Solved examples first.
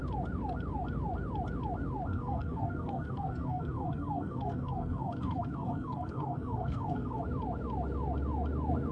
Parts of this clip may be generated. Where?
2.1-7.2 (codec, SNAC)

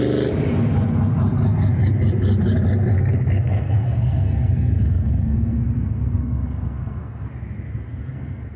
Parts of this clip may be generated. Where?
2.9-7.3 (codec, SNAC); 7.9-8.6

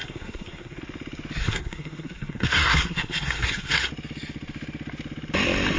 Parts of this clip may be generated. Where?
0.0-0.8 (codec, SNAC); 1.4-3.9

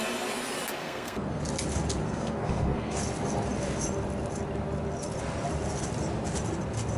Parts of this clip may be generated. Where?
0.8-1.4 (codec, SNAC); 2.0-3.0